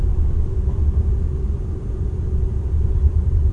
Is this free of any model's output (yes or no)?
yes